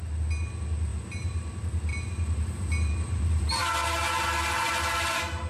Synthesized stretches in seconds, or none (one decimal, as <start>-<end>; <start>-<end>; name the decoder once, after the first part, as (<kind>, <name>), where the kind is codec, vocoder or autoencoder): 0.9-1.5 (vocoder, BigVGAN v2); 1.9-5.5